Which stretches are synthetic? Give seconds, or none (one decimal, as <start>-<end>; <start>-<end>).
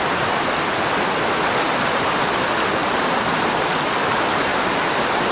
2.8-3.3; 4.5-5.3